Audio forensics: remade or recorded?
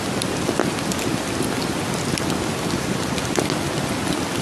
recorded